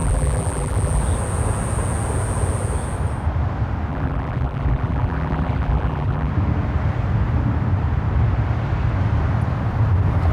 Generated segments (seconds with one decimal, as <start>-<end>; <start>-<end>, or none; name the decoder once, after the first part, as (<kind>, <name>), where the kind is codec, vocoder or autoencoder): 0.0-1.0 (vocoder, BigVGAN v2); 3.9-6.3